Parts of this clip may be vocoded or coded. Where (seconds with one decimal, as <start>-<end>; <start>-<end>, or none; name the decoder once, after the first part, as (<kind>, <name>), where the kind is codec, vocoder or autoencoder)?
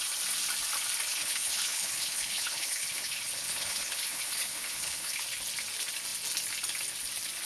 1.1-5.2 (codec, HILCodec)